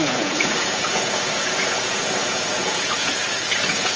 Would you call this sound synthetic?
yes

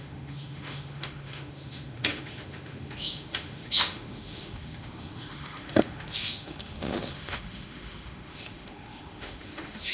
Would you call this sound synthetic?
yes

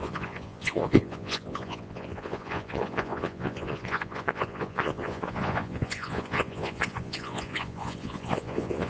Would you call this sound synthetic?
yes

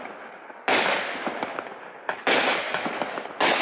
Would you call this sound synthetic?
no